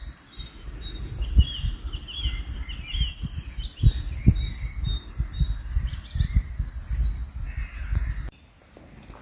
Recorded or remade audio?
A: recorded